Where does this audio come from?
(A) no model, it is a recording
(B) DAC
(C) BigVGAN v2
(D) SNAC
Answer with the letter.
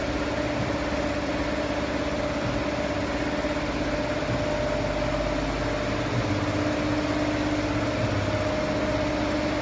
A